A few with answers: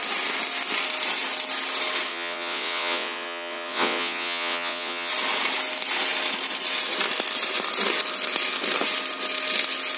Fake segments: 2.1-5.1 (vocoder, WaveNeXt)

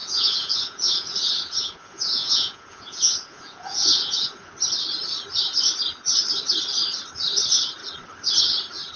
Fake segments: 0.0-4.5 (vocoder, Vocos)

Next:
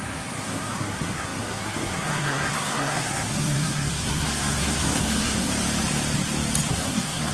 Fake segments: 0.0-5.5 (codec, SNAC); 6.7-7.3

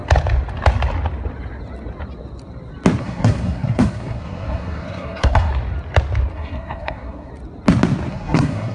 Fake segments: 3.0-5.5 (codec, SNAC); 6.3-7.3; 8.1-8.7